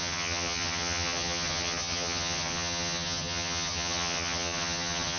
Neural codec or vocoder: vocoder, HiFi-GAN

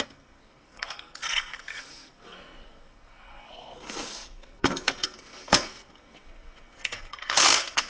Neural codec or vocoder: codec, SNAC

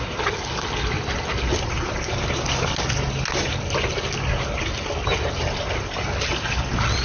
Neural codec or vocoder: none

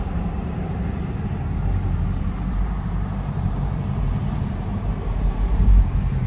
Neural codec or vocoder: vocoder, BigVGAN v2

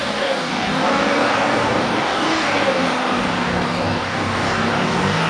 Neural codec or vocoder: codec, DAC